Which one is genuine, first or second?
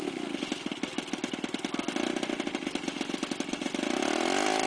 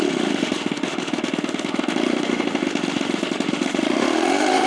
first